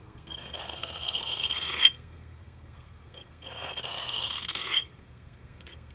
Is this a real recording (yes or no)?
no